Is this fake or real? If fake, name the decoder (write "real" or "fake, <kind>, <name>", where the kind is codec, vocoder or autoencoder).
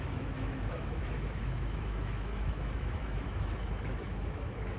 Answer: fake, autoencoder, DAC-VAE